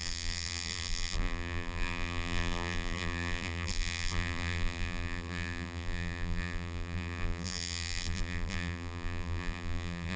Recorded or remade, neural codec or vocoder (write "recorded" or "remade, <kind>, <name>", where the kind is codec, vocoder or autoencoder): remade, vocoder, BigVGAN v2